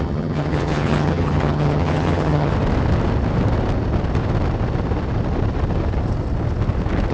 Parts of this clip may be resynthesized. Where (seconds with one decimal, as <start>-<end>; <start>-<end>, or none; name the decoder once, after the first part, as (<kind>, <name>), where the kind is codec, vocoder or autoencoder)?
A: 0.0-2.5 (vocoder, HiFi-GAN)